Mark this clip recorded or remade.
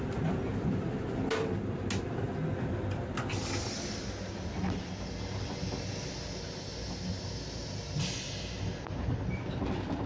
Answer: recorded